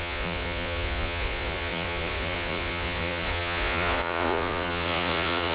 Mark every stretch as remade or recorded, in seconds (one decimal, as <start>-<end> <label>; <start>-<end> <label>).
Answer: 0.0-5.5 remade